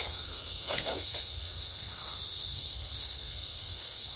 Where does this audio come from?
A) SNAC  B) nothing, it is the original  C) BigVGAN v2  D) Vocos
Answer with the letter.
A